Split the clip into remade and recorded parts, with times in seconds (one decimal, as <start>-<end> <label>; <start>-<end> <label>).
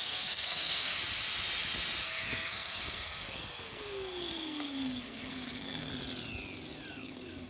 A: 0.0-1.0 remade; 1.0-2.0 recorded; 2.0-5.9 remade; 5.9-6.9 recorded; 6.9-7.5 remade